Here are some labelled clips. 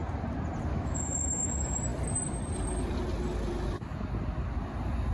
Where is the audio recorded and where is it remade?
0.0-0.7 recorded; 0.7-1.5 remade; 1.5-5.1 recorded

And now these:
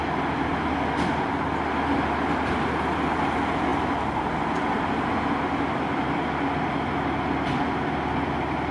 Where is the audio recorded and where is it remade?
0.0-8.7 recorded

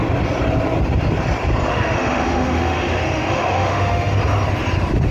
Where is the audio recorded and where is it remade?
0.0-1.7 recorded; 1.7-4.2 remade; 4.2-5.1 recorded

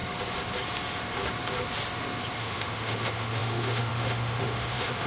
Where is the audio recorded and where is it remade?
0.0-2.4 recorded; 2.4-5.1 remade

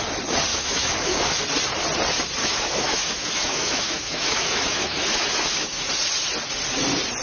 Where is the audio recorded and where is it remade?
0.0-0.5 recorded; 0.5-1.4 remade; 1.4-2.4 recorded; 2.4-5.9 remade; 5.9-7.2 recorded

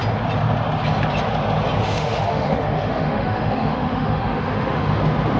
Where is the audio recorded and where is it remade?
0.0-1.8 recorded; 1.8-5.0 remade; 5.0-5.4 recorded

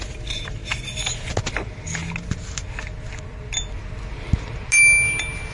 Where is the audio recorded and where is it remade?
0.0-5.5 recorded

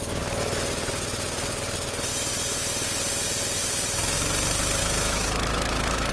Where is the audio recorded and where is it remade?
0.0-4.8 recorded; 4.8-6.1 remade